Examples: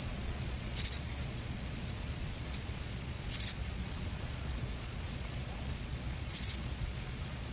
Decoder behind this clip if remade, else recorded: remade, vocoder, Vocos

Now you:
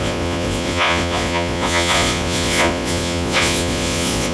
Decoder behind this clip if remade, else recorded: remade, vocoder, Vocos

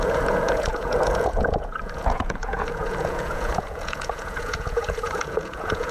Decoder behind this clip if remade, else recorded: remade, vocoder, Vocos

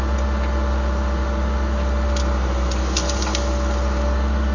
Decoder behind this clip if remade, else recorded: recorded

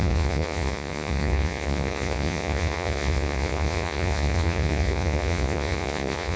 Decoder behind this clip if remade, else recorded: remade, vocoder, Vocos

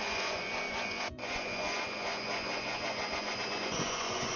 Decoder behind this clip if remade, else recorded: remade, vocoder, Vocos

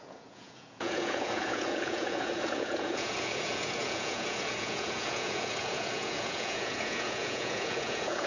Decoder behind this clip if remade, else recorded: remade, vocoder, Vocos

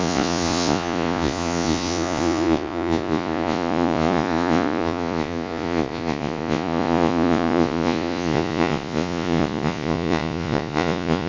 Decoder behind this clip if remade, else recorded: remade, vocoder, Vocos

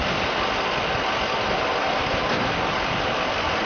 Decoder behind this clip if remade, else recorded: recorded